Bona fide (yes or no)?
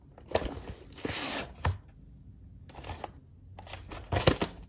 yes